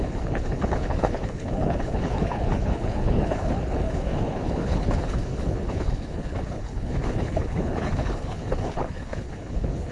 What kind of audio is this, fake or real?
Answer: fake